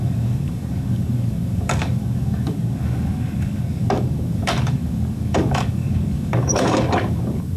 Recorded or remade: remade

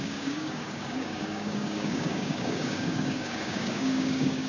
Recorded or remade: remade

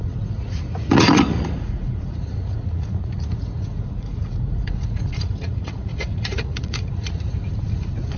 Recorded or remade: remade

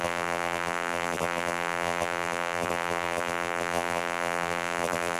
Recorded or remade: remade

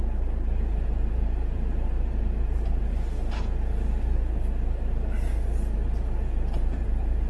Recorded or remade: remade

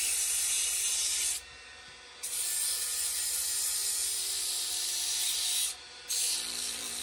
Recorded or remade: recorded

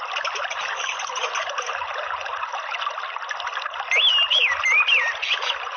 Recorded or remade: recorded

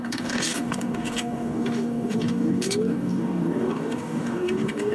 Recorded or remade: remade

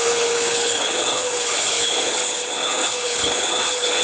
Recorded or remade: remade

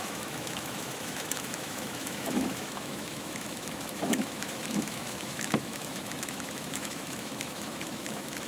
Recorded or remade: remade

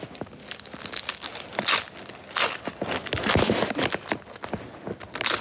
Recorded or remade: recorded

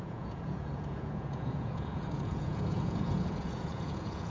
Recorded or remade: remade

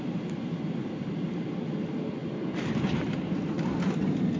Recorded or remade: recorded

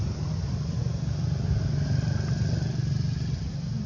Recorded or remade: recorded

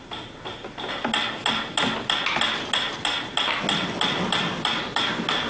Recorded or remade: recorded